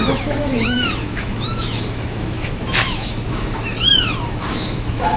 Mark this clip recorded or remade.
remade